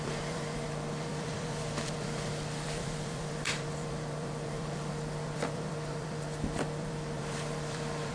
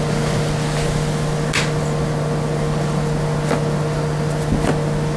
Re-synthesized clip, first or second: first